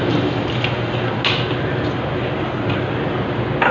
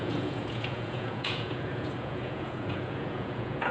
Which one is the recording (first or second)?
first